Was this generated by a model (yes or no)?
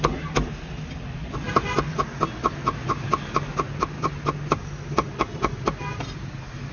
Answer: no